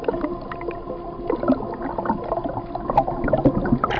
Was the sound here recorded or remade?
recorded